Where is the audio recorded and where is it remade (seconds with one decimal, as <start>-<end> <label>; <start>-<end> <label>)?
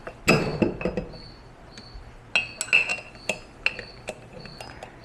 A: 0.0-5.0 recorded